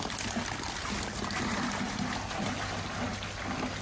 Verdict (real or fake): real